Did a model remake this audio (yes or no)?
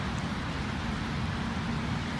yes